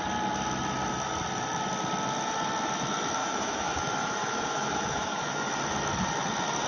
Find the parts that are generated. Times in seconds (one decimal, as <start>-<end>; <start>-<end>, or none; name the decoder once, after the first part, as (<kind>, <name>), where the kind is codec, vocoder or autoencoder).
3.2-5.5 (autoencoder, DAC-VAE)